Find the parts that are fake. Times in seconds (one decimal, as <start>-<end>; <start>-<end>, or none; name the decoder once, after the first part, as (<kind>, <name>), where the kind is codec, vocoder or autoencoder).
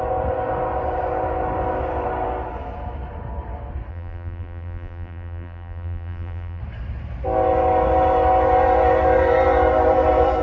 3.9-6.6 (vocoder, BigVGAN v2)